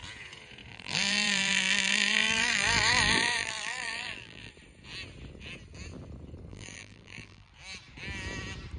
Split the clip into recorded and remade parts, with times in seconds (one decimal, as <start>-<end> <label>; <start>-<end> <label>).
0.0-0.7 recorded; 0.7-4.5 remade; 4.5-6.5 recorded; 6.5-7.5 remade; 7.5-8.8 recorded